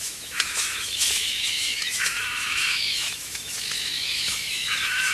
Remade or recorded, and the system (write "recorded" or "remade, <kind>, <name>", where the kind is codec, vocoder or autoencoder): remade, autoencoder, DAC-VAE